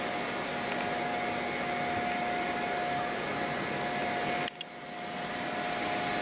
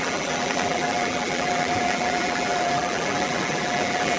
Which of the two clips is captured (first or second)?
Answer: first